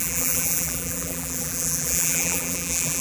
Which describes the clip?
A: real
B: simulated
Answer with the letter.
B